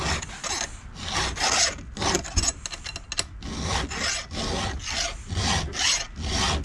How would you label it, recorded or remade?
recorded